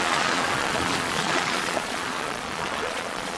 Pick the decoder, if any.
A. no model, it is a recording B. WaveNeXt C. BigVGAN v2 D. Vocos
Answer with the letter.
D